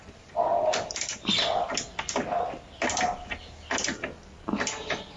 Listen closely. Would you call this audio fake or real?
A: real